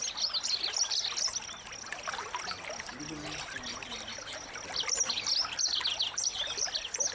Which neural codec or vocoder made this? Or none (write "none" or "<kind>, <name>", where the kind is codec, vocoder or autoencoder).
none